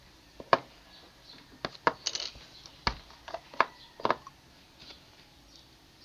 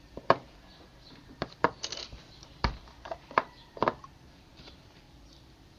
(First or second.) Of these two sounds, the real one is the first